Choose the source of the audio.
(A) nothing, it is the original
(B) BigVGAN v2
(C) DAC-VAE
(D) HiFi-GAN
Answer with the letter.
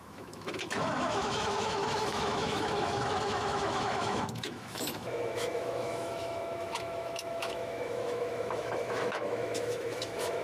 C